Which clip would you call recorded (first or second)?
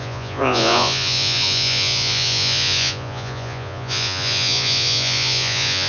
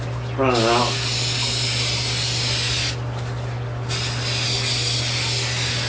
second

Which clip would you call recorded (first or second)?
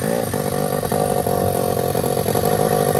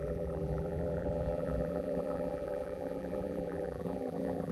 first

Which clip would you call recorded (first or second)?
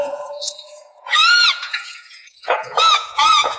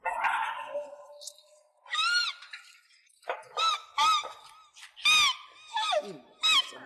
second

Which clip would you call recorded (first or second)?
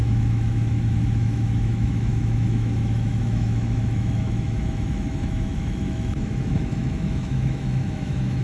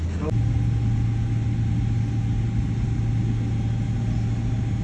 second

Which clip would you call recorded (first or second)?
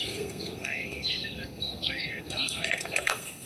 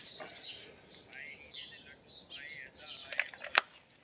second